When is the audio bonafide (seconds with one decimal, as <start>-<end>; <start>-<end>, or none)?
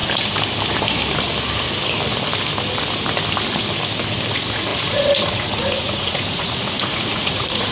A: 0.0-4.3